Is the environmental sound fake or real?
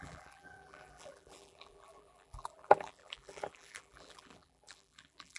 fake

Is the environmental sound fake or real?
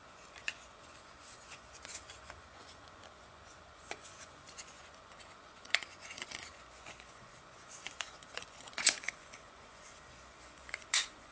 fake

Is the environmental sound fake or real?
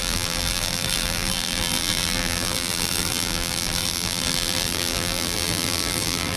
fake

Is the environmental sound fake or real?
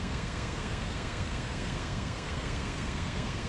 fake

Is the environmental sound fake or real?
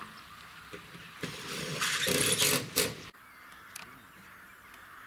fake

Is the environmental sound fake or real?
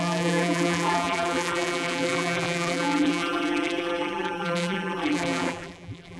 fake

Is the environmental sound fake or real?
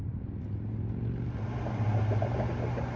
real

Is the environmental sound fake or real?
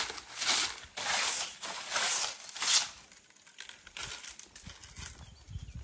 real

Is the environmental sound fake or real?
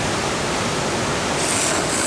real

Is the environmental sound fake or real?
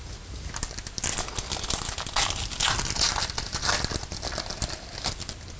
real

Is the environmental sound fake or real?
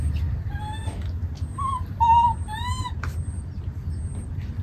real